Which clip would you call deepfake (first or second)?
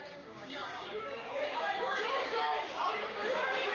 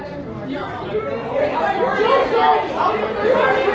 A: first